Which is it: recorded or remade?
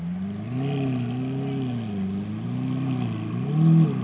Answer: recorded